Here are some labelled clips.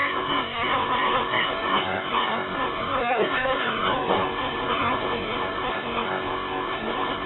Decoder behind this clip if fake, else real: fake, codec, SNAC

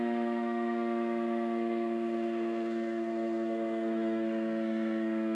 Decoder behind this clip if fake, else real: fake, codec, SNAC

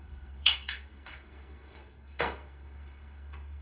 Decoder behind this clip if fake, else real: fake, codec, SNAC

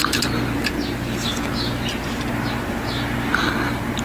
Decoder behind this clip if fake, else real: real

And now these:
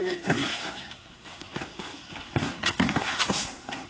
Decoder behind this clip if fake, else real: fake, codec, SNAC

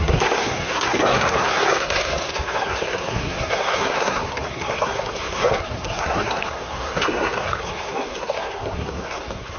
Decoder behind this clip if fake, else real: fake, codec, SNAC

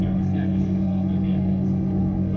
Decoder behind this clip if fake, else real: fake, codec, SNAC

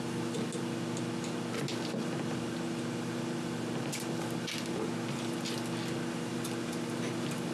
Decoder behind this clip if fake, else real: real